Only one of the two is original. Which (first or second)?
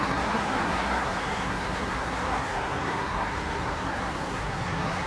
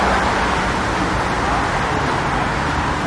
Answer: second